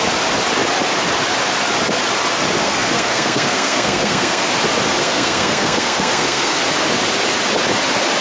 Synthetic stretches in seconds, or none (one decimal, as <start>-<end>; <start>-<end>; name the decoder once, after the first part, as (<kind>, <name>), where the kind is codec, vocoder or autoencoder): 2.6-4.5 (codec, SNAC); 5.0-6.6